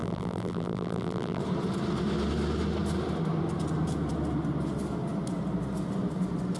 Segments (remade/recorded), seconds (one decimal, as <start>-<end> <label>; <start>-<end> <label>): 0.0-1.4 remade; 1.4-6.6 recorded